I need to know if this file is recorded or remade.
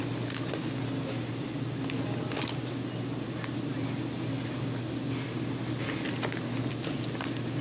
recorded